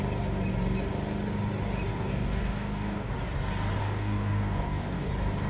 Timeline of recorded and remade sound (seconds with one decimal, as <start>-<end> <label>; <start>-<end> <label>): 0.0-1.9 recorded; 1.9-3.1 remade; 3.1-3.8 recorded; 3.8-5.1 remade; 5.1-5.5 recorded